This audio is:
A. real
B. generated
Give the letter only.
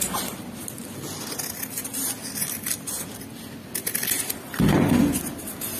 A